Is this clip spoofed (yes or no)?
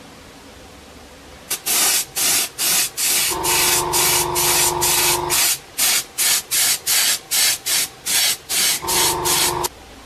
no